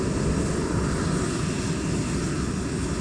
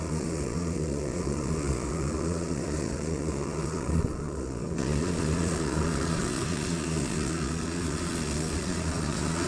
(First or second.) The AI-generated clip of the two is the second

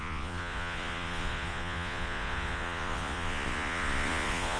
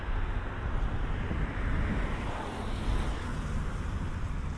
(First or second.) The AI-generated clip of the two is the first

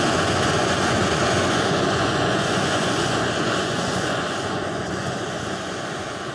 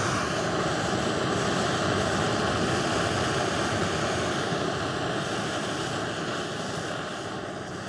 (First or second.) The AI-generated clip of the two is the first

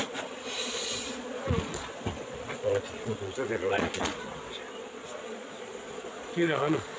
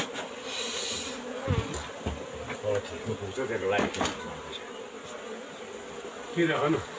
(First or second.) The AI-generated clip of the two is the first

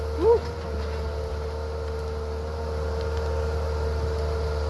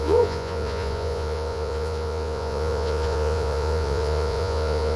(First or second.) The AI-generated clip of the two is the second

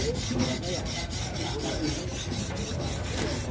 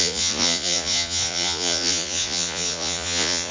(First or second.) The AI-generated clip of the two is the second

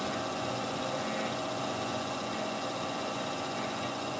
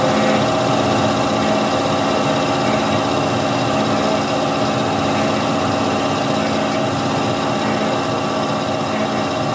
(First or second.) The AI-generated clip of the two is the first